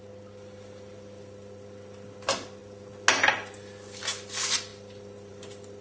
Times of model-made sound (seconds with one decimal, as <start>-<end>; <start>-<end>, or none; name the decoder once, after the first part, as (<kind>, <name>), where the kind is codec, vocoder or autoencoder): none